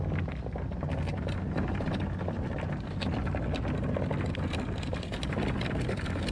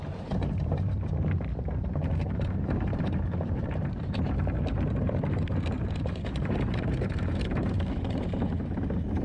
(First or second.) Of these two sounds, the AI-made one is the second